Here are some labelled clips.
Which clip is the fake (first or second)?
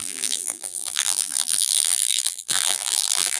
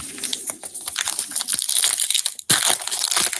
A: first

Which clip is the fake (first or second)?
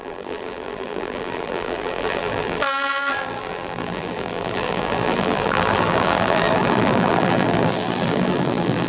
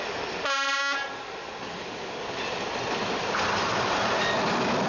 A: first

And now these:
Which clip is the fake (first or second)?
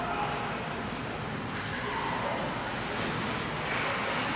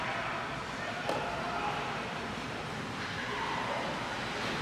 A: second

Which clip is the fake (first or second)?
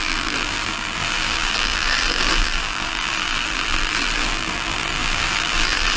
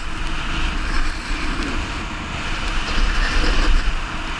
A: first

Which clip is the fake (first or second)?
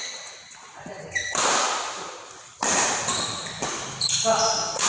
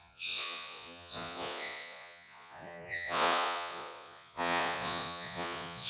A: second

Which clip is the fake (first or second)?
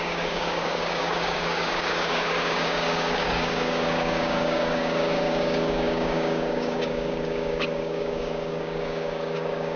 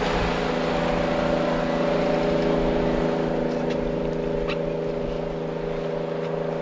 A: first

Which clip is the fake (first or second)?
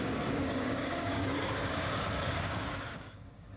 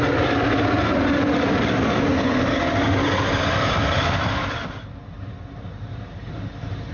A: first